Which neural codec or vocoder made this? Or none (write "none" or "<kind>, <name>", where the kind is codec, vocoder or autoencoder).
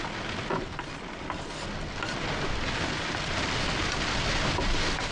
none